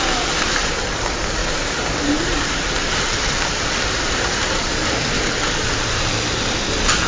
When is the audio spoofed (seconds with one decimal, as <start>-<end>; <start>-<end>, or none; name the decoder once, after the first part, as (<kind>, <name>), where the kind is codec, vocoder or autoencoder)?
0.0-7.1 (vocoder, BigVGAN v2)